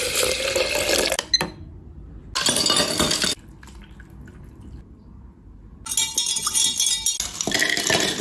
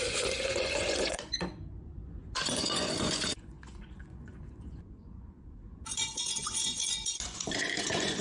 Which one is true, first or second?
first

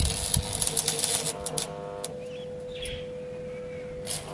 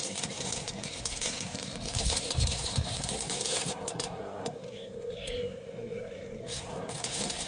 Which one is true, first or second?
first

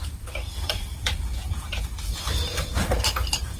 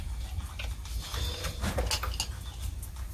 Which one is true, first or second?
second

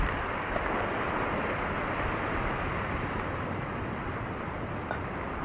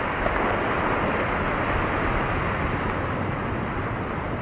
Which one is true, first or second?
second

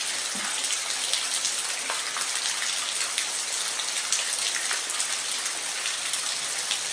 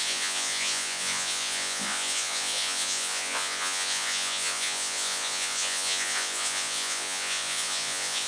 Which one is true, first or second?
first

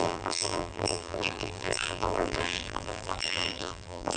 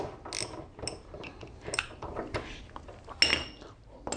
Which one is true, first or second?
second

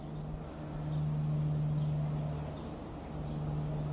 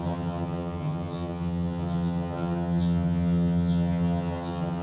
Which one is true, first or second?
first